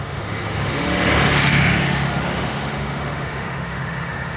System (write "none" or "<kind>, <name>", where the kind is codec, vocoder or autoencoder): autoencoder, DAC-VAE